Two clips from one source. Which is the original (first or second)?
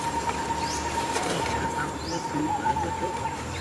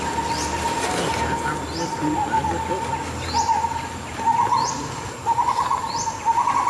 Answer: second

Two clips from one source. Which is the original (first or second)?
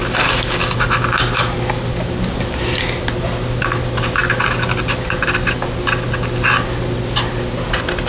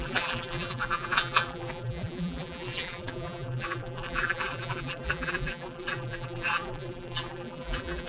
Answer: first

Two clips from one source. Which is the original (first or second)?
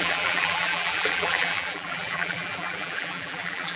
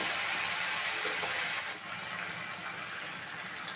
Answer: second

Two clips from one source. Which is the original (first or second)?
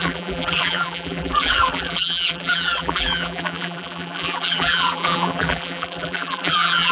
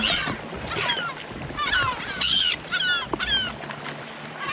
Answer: second